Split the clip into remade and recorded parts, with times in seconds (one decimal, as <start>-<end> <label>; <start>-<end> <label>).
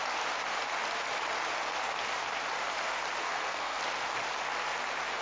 0.0-3.2 recorded; 3.2-3.8 remade; 3.8-5.2 recorded